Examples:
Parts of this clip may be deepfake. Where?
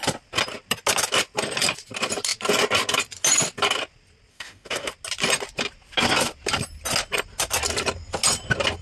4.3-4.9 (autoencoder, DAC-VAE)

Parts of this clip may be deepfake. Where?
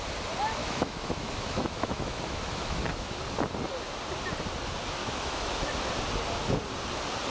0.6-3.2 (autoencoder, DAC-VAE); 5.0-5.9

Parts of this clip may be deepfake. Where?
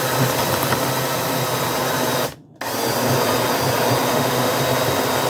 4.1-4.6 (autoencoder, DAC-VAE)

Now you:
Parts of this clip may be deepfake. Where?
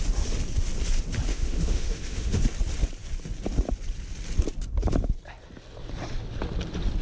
1.3-2.4 (autoencoder, DAC-VAE)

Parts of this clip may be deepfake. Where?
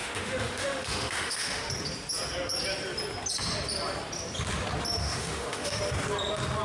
0.0-1.7 (autoencoder, DAC-VAE); 5.0-5.8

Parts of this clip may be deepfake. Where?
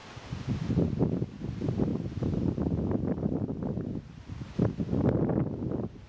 none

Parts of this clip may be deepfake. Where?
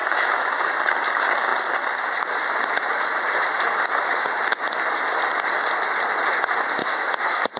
0.0-0.8 (autoencoder, DAC-VAE); 6.8-7.6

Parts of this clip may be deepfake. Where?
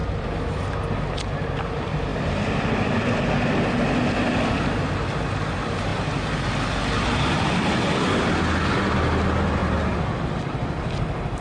none